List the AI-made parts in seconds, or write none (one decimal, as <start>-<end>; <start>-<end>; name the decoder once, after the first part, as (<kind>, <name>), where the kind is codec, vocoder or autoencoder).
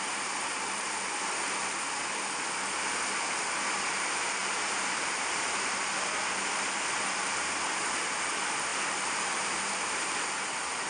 4.4-5.8 (vocoder, BigVGAN v2); 8.7-10.4